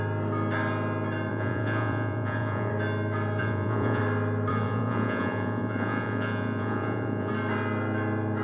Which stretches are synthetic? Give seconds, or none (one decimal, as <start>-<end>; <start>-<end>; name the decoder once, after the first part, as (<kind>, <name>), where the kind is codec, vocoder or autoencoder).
1.3-2.7 (vocoder, Vocos); 3.4-4.0; 4.5-7.3

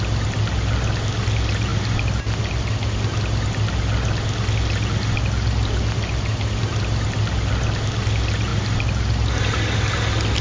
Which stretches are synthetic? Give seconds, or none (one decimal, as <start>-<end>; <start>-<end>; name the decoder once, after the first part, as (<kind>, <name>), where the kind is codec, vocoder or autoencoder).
none

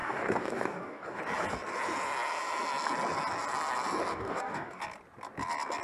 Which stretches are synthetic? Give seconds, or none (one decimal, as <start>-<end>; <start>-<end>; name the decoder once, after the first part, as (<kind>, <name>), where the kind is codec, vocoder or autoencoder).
0.0-1.2 (codec, DAC); 4.1-4.8

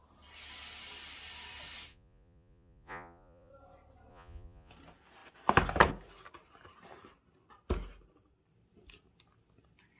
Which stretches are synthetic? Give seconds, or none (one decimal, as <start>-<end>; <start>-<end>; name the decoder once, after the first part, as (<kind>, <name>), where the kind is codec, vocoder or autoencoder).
1.9-3.5 (vocoder, Vocos); 4.1-4.7

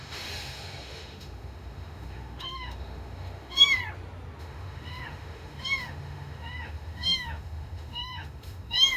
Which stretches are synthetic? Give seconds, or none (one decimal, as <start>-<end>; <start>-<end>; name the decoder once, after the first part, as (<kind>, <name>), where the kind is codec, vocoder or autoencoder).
0.0-3.8 (autoencoder, DAC-VAE); 4.4-9.0